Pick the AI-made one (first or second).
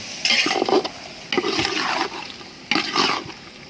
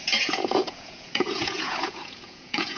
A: second